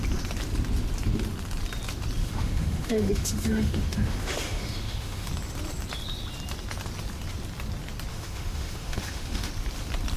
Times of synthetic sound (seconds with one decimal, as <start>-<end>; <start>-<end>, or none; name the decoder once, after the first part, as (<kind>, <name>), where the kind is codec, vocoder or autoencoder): 2.2-5.3 (autoencoder, DAC-VAE); 8.1-9.5